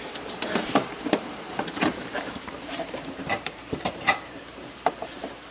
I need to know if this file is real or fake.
fake